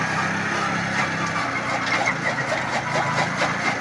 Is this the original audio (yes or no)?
yes